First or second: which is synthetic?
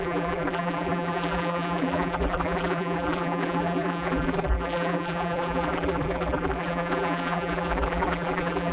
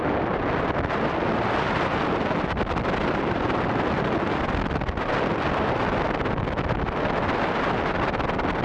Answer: first